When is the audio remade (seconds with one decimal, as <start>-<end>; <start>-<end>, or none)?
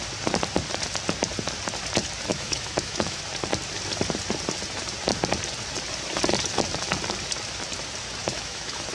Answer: 2.3-3.2; 8.2-8.9